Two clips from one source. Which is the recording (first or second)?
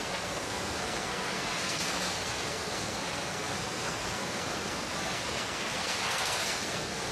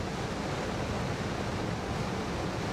second